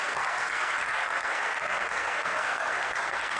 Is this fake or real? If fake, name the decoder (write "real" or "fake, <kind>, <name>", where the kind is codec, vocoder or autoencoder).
fake, codec, SNAC